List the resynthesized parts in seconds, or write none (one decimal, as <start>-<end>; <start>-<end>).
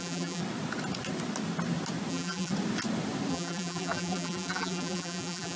0.0-0.4; 2.1-2.5; 3.3-5.6